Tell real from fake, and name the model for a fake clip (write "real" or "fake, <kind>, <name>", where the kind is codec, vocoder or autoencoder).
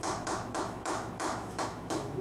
fake, autoencoder, DAC-VAE